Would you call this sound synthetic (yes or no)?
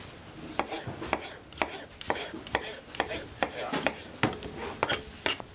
no